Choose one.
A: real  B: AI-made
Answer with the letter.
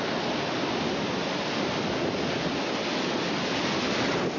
A